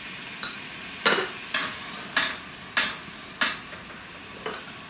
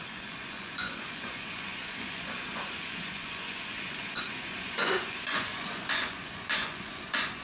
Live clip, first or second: first